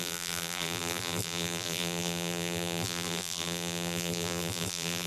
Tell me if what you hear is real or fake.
fake